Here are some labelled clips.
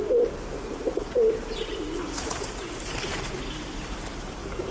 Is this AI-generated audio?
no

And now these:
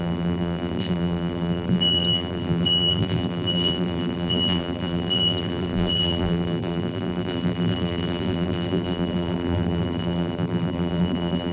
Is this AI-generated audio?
yes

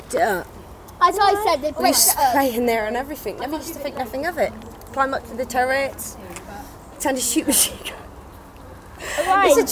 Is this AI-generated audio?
no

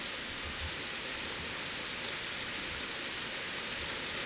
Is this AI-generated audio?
no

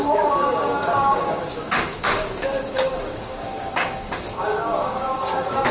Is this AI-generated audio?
yes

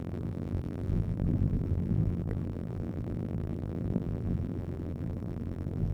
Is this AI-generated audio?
yes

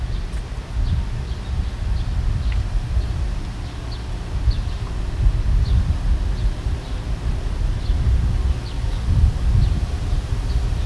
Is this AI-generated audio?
no